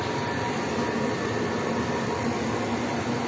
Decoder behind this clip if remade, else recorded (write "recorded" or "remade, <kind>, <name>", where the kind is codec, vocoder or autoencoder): recorded